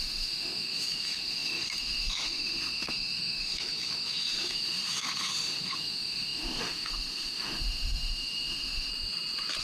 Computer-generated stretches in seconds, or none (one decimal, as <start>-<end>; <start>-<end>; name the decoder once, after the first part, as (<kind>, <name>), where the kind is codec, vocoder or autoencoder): 0.0-8.9 (autoencoder, DAC-VAE)